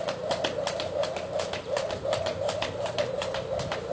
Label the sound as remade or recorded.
recorded